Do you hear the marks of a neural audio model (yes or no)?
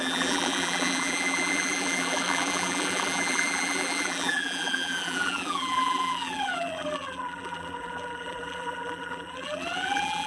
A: yes